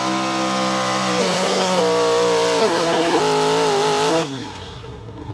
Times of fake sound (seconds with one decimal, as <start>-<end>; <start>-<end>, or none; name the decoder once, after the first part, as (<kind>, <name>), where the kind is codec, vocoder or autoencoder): 1.2-1.8 (codec, SNAC); 2.6-3.2; 4.1-5.3